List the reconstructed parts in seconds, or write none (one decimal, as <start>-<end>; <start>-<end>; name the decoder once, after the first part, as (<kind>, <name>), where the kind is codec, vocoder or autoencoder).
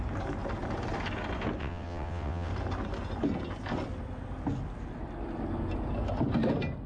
1.6-2.5 (vocoder, WaveNeXt)